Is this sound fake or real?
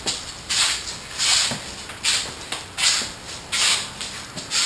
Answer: real